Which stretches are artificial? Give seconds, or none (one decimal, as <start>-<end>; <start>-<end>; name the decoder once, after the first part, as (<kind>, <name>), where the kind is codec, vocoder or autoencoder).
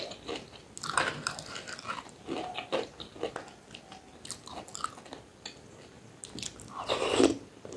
none